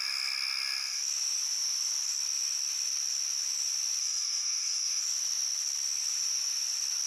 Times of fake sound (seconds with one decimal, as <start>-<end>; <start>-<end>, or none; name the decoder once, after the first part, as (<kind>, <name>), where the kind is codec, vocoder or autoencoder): 4.0-5.0 (codec, DAC)